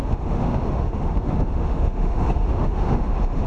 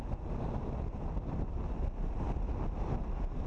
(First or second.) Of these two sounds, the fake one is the first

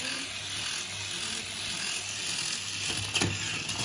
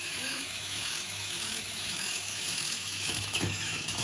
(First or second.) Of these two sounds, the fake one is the second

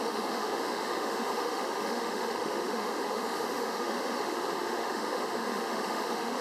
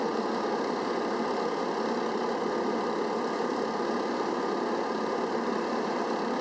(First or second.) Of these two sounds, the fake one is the first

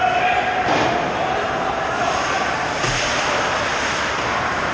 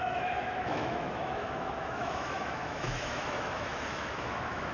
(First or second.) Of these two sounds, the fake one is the second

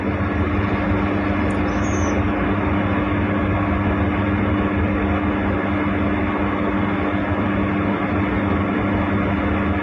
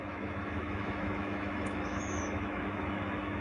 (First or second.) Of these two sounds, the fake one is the second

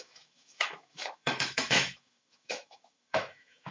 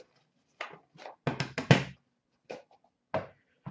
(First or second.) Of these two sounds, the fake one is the first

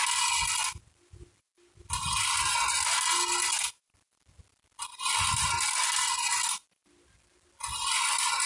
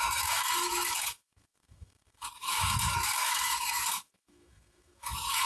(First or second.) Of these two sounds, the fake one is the second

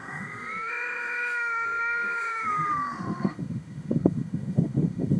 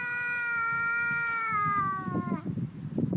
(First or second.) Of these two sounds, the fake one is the first